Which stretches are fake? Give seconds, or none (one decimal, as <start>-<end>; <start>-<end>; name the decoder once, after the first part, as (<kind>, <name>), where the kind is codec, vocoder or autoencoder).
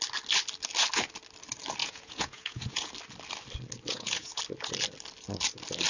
1.8-2.9 (vocoder, Vocos); 3.9-4.4